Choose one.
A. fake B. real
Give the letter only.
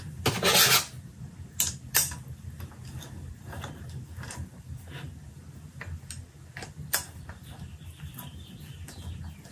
B